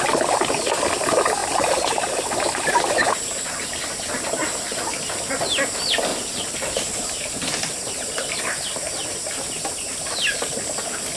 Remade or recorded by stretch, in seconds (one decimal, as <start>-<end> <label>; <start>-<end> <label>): 0.0-1.4 recorded; 1.4-3.7 remade; 3.7-6.1 recorded; 6.1-10.0 remade; 10.0-11.2 recorded